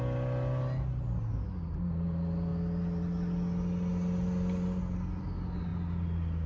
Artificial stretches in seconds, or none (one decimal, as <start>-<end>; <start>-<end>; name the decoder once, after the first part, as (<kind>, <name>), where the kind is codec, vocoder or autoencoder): none